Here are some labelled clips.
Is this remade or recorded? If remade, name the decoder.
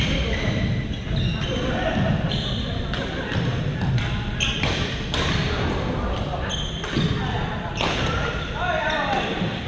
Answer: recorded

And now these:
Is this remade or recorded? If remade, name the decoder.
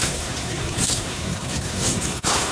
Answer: remade, codec, SNAC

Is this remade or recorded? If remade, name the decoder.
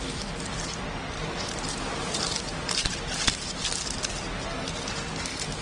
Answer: recorded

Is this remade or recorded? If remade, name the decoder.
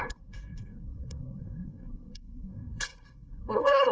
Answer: remade, codec, SNAC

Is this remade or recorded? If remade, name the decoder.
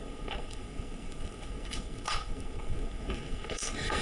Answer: remade, codec, SNAC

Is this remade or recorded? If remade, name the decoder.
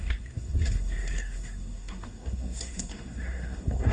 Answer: remade, codec, SNAC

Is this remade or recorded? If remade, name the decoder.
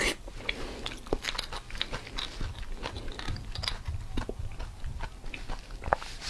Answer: recorded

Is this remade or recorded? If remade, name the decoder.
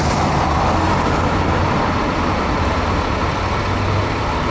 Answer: recorded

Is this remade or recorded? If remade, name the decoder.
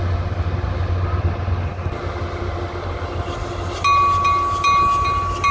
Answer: recorded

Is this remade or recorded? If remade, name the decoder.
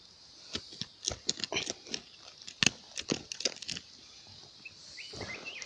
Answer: recorded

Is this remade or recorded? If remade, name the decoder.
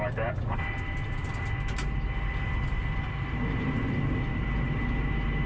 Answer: recorded